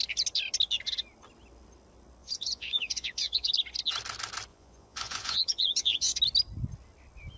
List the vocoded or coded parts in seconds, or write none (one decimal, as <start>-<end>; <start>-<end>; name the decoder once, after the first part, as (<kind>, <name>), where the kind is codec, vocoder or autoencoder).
2.2-3.5 (vocoder, Vocos); 4.5-6.2